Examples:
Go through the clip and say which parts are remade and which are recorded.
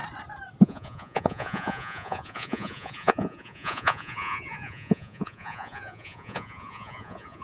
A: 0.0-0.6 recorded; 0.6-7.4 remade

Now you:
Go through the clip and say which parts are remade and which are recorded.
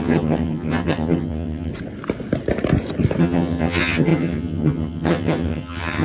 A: 0.0-1.7 remade; 1.7-3.2 recorded; 3.2-6.0 remade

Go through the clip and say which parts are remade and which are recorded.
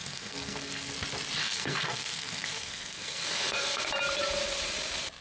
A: 0.0-0.9 remade; 0.9-1.4 recorded; 1.4-3.8 remade; 3.8-5.2 recorded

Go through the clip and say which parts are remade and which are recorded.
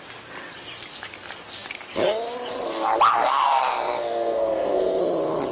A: 0.0-3.1 recorded; 3.1-5.0 remade; 5.0-5.5 recorded